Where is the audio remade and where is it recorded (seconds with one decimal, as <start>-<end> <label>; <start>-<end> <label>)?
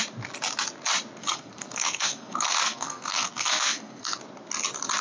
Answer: 0.0-1.2 recorded; 1.2-4.2 remade; 4.2-5.0 recorded